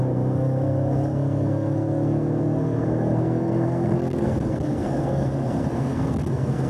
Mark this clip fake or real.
fake